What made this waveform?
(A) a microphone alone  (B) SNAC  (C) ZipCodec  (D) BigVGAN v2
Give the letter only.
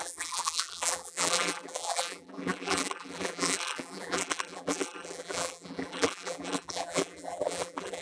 D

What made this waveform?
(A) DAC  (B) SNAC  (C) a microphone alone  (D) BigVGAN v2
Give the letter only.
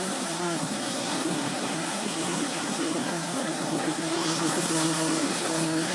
B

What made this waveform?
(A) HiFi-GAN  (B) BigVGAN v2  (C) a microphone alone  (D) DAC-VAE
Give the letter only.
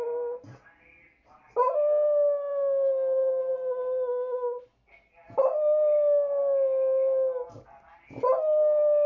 C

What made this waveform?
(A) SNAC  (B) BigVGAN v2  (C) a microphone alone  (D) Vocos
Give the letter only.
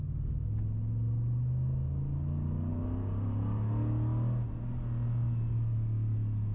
C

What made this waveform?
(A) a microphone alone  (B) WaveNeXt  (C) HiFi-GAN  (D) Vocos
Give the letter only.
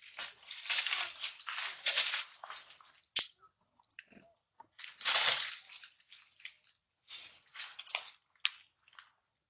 A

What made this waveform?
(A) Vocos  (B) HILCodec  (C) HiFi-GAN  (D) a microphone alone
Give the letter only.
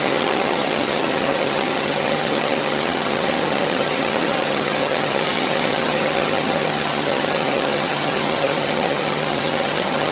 C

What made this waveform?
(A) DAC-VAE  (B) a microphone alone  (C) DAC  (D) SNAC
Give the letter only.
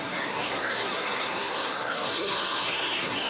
D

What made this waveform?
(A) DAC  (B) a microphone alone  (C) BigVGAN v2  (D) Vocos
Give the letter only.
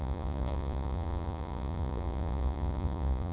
D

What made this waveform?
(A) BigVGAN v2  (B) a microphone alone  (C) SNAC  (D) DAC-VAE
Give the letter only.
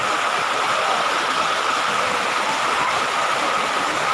B